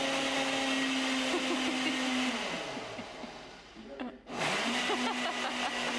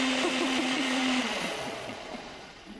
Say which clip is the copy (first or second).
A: second